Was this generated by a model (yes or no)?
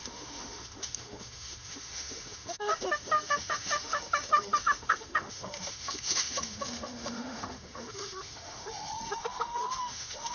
yes